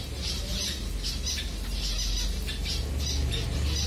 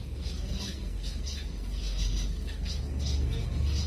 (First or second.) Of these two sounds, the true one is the first